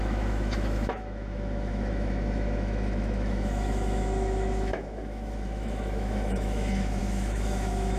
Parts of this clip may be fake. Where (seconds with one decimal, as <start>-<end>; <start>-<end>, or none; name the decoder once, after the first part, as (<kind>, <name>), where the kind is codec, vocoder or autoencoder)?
0.0-8.0 (autoencoder, DAC-VAE)